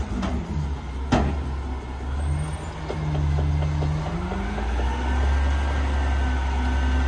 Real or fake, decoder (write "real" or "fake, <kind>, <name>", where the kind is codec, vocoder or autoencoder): real